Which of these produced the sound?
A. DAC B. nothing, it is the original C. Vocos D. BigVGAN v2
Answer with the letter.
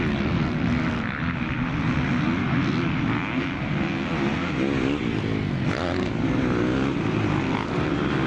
B